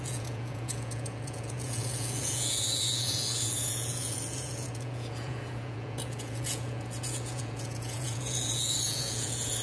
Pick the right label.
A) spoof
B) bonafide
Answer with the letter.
A